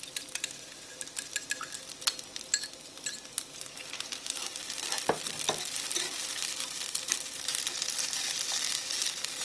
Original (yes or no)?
no